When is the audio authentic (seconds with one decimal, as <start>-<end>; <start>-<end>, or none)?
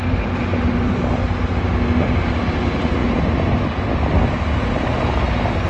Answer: 0.0-5.7